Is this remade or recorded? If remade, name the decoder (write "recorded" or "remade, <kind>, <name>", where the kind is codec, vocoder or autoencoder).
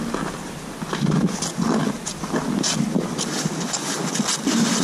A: recorded